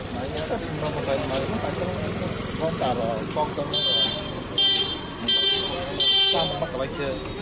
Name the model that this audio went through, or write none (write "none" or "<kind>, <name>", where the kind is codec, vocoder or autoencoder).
none